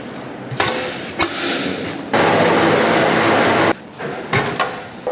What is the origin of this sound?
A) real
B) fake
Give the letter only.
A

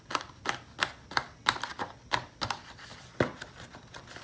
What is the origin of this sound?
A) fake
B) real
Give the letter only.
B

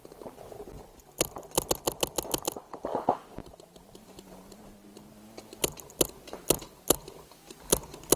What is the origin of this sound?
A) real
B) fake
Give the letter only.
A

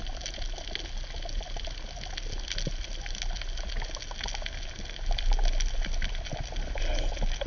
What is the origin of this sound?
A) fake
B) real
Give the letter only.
B